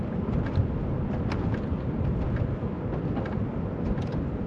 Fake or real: real